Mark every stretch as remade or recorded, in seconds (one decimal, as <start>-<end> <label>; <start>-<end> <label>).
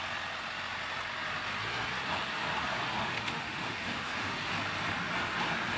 0.0-3.0 recorded; 3.0-4.5 remade; 4.5-5.8 recorded